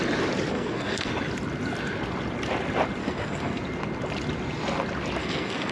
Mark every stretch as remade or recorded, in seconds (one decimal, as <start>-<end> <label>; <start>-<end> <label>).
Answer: 0.0-0.5 recorded; 0.5-1.1 remade; 1.1-3.0 recorded; 3.0-3.6 remade; 3.6-5.2 recorded; 5.2-5.7 remade

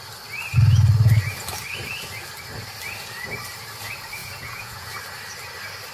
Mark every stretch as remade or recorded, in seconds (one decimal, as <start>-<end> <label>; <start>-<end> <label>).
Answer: 0.0-4.2 recorded; 4.2-4.9 remade; 4.9-5.9 recorded

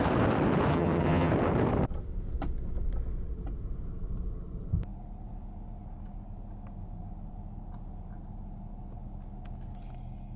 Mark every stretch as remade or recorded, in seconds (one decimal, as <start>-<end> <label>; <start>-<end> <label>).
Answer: 0.0-0.7 recorded; 0.7-1.3 remade; 1.3-10.4 recorded

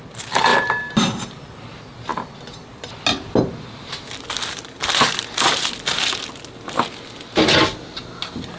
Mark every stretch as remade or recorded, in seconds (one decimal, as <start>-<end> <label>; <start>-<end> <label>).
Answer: 0.0-8.6 recorded